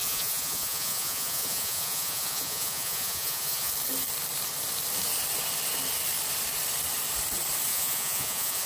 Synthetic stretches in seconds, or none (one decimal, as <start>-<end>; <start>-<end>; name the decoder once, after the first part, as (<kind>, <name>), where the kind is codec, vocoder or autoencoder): 0.0-3.7 (vocoder, Vocos); 7.7-8.7